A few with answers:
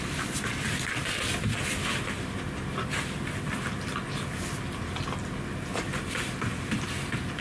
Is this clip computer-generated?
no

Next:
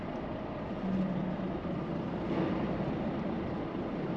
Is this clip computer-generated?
yes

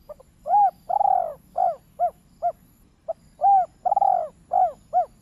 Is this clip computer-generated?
no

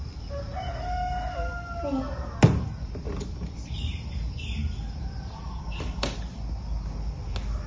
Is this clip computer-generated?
no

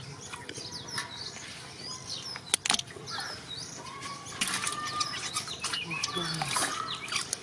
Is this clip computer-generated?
no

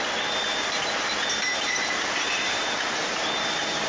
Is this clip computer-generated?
yes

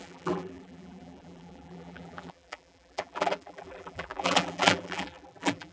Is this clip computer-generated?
yes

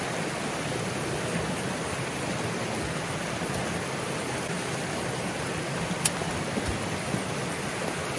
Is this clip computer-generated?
no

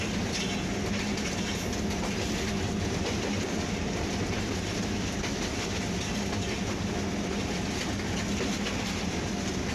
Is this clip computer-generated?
no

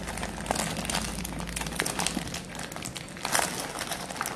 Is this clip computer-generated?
no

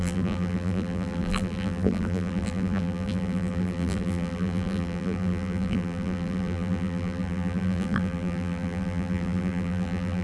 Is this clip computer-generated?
yes